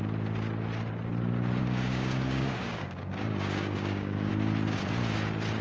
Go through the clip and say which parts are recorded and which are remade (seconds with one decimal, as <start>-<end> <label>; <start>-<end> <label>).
0.0-1.6 recorded; 1.6-4.3 remade; 4.3-5.6 recorded